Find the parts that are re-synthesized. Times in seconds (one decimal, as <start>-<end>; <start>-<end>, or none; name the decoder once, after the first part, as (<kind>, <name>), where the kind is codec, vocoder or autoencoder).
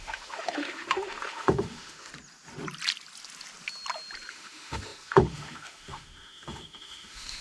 0.0-2.1 (autoencoder, DAC-VAE); 4.3-7.4